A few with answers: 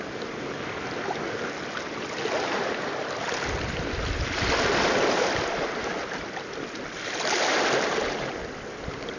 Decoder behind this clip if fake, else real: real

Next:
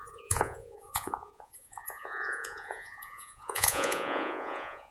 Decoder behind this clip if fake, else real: fake, vocoder, Vocos